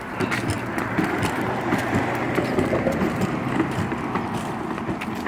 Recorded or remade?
remade